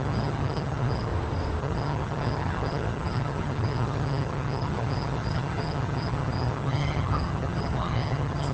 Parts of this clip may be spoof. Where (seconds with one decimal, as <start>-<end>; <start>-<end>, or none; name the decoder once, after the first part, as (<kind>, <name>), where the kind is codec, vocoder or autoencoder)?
0.0-1.1 (vocoder, HiFi-GAN); 1.6-8.5

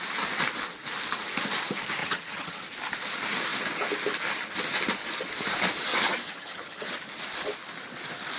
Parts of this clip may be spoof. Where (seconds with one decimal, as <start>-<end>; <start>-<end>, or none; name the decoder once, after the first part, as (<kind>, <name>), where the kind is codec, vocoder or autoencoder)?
2.0-2.6 (vocoder, HiFi-GAN); 5.9-7.0

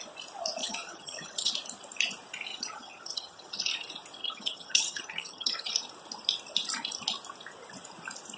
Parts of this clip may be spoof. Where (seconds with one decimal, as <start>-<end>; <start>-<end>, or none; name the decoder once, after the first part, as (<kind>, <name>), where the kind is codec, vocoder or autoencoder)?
0.6-1.5 (vocoder, HiFi-GAN); 2.5-3.6; 4.2-5.7